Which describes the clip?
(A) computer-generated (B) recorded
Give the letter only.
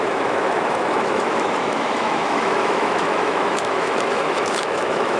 A